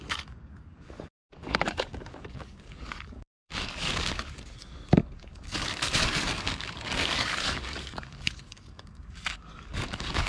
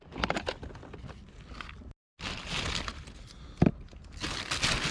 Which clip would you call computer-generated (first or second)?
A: first